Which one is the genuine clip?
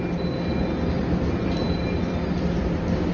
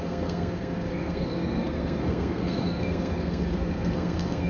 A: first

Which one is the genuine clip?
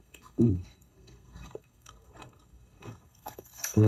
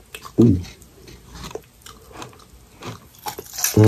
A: second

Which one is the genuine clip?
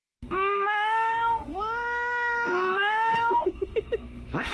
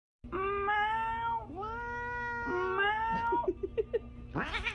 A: second